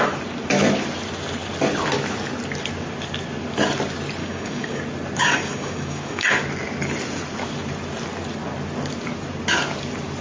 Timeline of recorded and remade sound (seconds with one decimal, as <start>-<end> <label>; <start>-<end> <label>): 0.0-4.2 recorded; 4.2-4.8 remade; 4.8-5.2 recorded; 5.2-6.3 remade; 6.3-10.2 recorded